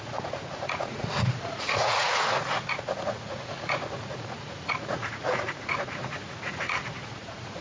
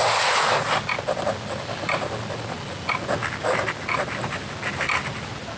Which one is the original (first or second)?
second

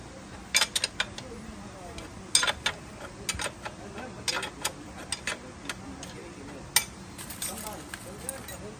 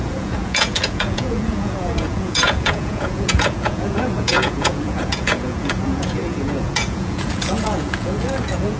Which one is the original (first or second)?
first